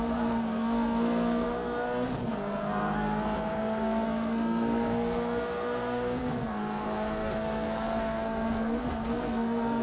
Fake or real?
fake